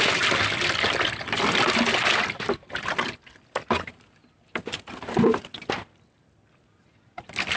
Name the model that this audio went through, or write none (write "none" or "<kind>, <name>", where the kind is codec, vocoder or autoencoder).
none